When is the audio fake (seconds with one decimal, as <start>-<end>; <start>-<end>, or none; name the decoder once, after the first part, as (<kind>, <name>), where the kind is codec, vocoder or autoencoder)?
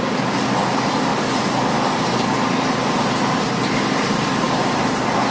none